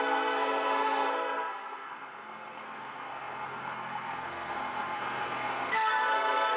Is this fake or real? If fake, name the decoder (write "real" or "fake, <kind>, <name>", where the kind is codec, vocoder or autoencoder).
fake, codec, SNAC